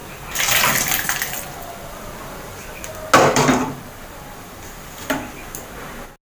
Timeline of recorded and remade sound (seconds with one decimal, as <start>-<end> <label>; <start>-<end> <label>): 0.0-2.9 remade; 2.9-3.3 recorded; 3.3-5.0 remade; 5.0-6.3 recorded